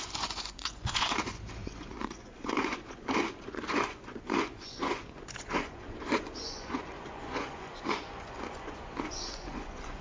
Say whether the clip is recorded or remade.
remade